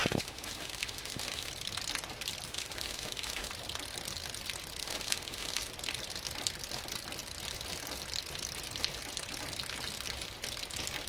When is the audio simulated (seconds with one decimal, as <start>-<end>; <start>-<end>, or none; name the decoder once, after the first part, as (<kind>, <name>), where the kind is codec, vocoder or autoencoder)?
0.0-1.5 (autoencoder, DAC-VAE); 2.5-3.5; 4.8-5.6